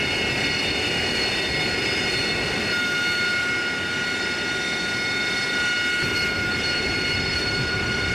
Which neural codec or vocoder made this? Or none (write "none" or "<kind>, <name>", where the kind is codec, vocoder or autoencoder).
none